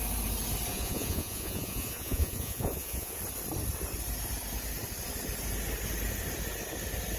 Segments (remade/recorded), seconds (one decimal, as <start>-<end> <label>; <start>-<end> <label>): 0.0-0.7 recorded; 0.7-3.2 remade; 3.2-7.2 recorded

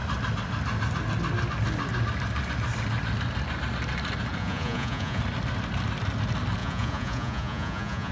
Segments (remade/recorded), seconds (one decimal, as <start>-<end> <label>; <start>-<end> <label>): 0.0-4.4 recorded; 4.4-5.2 remade; 5.2-6.6 recorded; 6.6-8.1 remade

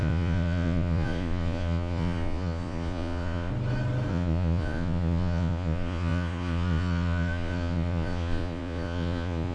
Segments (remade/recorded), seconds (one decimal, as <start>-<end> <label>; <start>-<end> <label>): 0.0-3.5 remade; 3.5-4.1 recorded; 4.1-9.5 remade

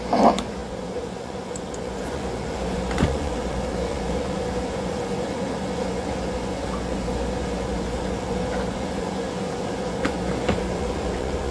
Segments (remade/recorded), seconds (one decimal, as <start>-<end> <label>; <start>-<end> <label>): 0.0-11.5 remade

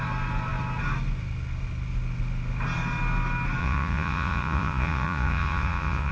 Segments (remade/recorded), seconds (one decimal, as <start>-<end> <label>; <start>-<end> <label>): 0.0-3.6 recorded; 3.6-6.1 remade

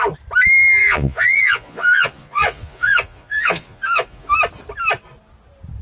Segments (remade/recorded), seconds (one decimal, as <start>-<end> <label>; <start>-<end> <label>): 0.0-0.8 recorded; 0.8-4.3 remade; 4.3-5.8 recorded

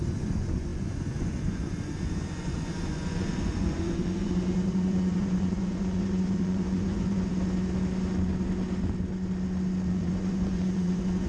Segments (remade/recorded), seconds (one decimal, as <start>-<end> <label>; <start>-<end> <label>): 0.0-7.3 remade; 7.3-9.9 recorded; 9.9-11.3 remade